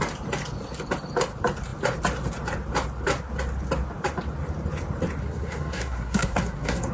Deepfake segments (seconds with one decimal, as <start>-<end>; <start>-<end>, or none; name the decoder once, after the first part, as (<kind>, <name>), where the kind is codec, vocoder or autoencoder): 5.2-6.9 (codec, SNAC)